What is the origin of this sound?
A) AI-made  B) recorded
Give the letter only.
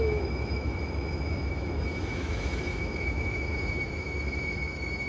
A